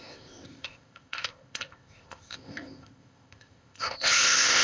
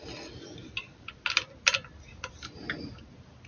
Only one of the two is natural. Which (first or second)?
second